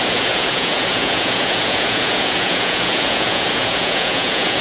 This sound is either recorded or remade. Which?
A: remade